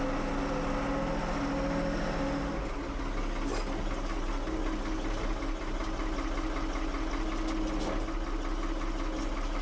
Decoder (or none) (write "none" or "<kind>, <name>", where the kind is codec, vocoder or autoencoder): none